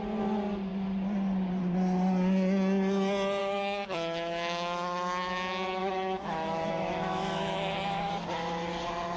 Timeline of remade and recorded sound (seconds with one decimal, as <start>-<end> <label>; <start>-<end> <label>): 0.0-3.4 recorded; 3.4-8.1 remade; 8.1-9.2 recorded